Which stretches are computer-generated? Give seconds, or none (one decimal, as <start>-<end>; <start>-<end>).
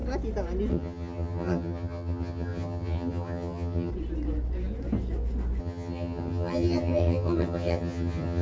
0.7-3.9; 5.6-8.4